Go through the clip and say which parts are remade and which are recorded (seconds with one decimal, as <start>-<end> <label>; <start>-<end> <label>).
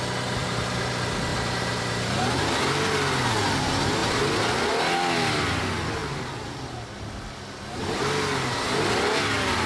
0.0-0.4 recorded; 0.4-0.9 remade; 0.9-1.3 recorded; 1.3-2.6 remade; 2.6-6.0 recorded; 6.0-6.5 remade; 6.5-9.7 recorded